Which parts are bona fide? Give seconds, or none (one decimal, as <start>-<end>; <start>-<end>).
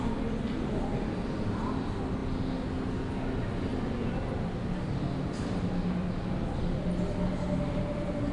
0.0-8.3